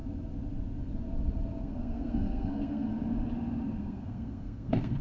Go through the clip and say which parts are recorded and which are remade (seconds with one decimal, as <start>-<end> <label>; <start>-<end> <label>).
0.0-1.6 recorded; 1.6-2.9 remade; 2.9-3.8 recorded; 3.8-5.0 remade